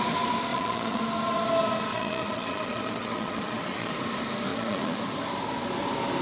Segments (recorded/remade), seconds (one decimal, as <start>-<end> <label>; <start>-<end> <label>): 0.0-0.5 recorded; 0.5-1.0 remade; 1.0-1.9 recorded; 1.9-3.9 remade; 3.9-4.5 recorded; 4.5-5.0 remade; 5.0-6.2 recorded